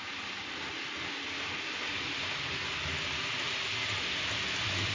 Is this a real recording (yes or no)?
yes